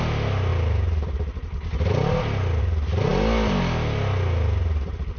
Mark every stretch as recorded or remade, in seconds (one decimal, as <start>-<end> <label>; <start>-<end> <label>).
0.0-5.2 recorded

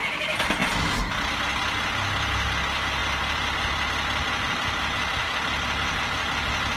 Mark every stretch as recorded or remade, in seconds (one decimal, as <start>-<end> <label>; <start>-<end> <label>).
0.0-6.8 recorded

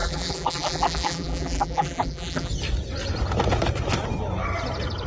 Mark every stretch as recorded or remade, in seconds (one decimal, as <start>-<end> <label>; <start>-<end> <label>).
0.0-2.5 remade; 2.5-5.1 recorded

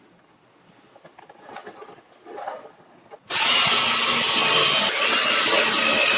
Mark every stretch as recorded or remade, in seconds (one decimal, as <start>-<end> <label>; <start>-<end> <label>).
0.0-6.2 recorded

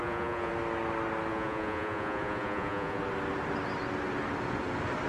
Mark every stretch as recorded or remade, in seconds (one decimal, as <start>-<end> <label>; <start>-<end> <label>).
0.0-0.5 remade; 0.5-1.3 recorded; 1.3-3.0 remade; 3.0-5.1 recorded

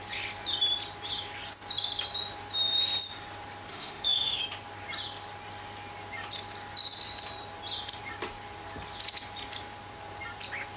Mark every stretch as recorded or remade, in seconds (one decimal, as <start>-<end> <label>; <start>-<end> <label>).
0.0-3.7 recorded; 3.7-4.4 remade; 4.4-10.8 recorded